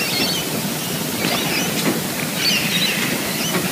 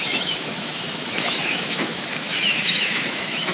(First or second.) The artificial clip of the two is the second